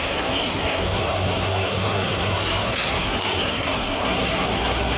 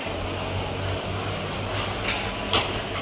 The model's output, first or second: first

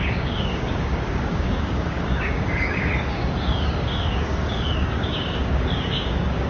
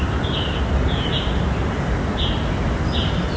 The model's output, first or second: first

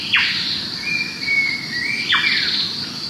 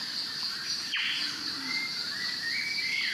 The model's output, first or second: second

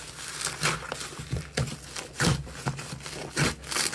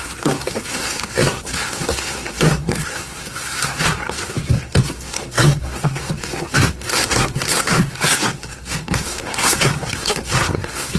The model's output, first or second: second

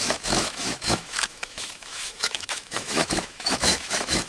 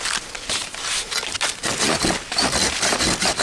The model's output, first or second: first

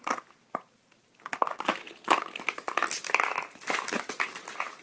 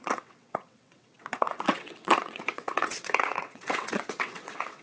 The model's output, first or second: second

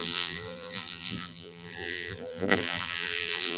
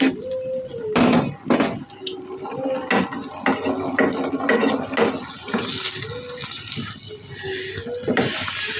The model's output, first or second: first